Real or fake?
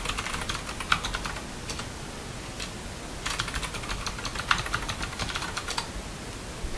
real